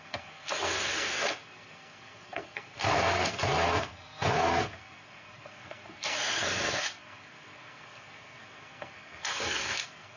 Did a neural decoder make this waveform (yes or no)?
yes